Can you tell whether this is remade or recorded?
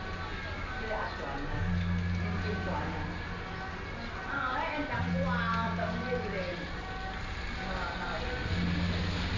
recorded